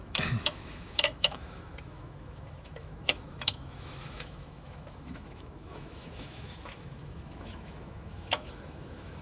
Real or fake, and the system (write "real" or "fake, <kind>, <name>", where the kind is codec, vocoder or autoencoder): fake, autoencoder, DAC-VAE